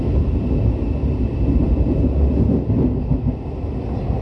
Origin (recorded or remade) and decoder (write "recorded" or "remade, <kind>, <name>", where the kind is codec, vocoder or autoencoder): recorded